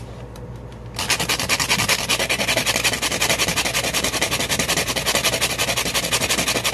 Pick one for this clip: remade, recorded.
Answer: recorded